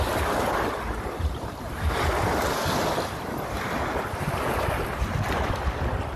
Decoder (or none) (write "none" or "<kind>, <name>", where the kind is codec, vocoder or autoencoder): none